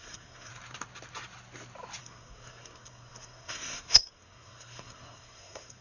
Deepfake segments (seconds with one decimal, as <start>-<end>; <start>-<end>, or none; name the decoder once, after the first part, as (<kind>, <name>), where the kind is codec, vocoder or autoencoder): 0.0-0.5 (codec, SNAC); 2.0-5.8